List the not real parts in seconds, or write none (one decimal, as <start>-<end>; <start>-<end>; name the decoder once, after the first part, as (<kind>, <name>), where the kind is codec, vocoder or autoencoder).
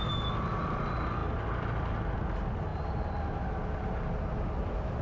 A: none